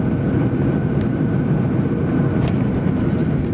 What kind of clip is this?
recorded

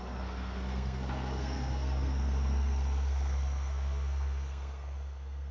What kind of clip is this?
remade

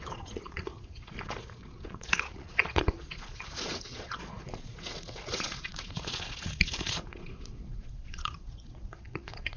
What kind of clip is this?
remade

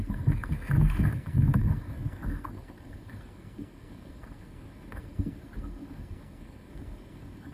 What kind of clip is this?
remade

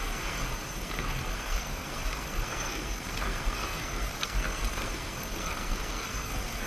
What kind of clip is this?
remade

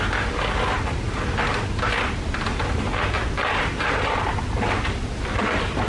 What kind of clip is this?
recorded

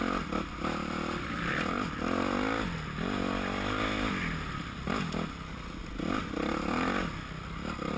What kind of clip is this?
recorded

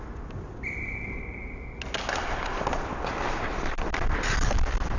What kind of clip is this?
recorded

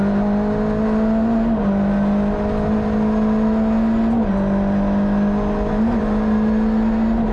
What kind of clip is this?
recorded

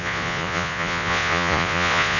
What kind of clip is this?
remade